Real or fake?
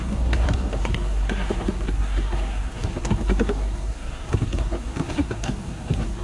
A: fake